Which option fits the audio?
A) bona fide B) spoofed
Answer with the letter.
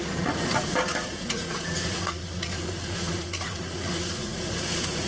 B